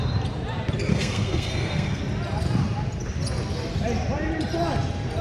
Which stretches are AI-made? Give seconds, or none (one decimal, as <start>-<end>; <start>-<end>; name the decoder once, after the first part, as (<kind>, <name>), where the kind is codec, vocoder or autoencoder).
0.9-2.0 (codec, SNAC)